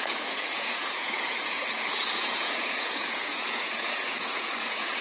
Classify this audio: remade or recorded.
remade